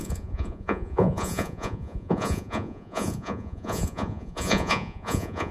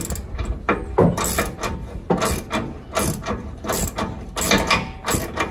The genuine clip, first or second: second